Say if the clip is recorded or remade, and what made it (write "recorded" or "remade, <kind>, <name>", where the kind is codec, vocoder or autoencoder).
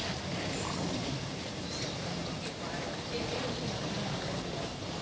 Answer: remade, vocoder, BigVGAN v2